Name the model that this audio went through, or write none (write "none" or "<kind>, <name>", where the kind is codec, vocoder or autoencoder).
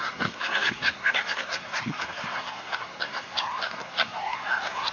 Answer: codec, SNAC